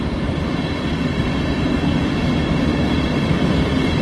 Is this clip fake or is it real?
real